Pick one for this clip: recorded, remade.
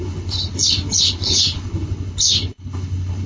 remade